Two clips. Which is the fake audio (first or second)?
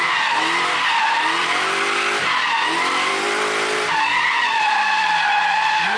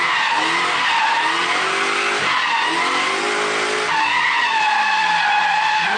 first